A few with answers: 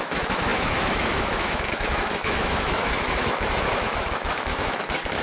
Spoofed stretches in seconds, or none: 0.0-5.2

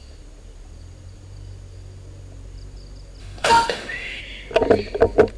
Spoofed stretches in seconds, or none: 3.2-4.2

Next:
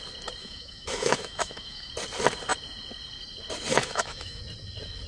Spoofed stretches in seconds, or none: 0.4-1.9; 3.7-4.4

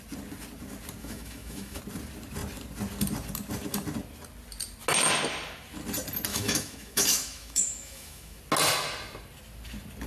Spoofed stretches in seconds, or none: 1.0-1.8; 6.3-8.4